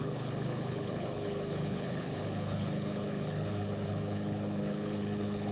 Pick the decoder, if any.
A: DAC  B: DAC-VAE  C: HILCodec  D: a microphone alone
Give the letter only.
C